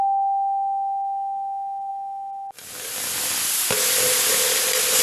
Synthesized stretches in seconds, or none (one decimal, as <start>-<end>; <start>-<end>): none